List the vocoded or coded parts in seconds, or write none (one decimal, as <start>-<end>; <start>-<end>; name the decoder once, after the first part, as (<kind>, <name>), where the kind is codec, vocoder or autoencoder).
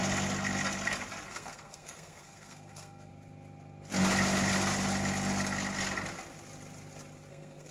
1.3-3.1 (codec, SNAC); 7.3-7.7